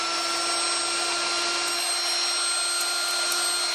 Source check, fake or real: real